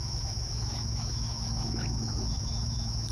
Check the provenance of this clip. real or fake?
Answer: fake